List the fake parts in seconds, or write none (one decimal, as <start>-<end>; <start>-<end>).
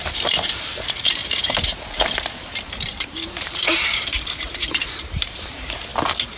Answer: 0.0-5.9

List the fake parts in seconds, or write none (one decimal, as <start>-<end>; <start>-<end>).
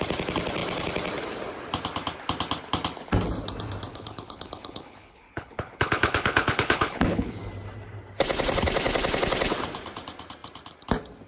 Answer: 3.9-7.4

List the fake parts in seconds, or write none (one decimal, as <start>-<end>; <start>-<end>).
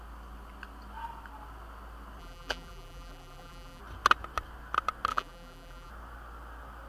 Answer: 2.2-3.8; 5.1-5.9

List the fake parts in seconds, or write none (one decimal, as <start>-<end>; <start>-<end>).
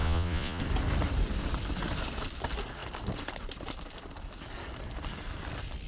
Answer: 0.0-0.6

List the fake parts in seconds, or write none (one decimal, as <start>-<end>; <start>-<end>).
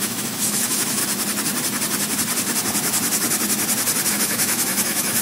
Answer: 0.0-1.0; 4.1-5.2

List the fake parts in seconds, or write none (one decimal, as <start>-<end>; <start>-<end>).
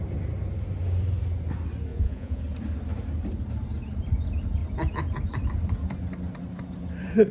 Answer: 1.9-2.4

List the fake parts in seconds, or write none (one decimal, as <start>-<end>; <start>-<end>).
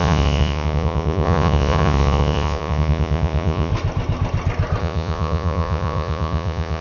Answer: 0.0-3.7; 4.8-6.8